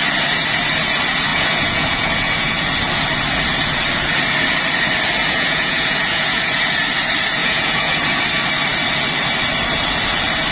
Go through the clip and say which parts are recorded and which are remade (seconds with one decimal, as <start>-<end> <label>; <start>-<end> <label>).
0.0-1.3 recorded; 1.3-2.5 remade; 2.5-5.2 recorded; 5.2-6.6 remade; 6.6-7.4 recorded; 7.4-8.2 remade; 8.2-10.5 recorded